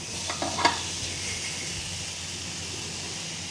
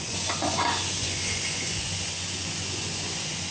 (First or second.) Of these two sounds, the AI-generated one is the second